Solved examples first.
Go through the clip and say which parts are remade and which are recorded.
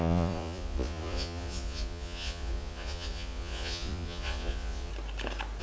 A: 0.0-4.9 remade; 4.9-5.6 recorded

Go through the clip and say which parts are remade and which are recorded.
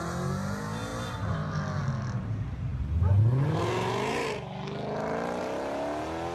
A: 0.0-6.3 recorded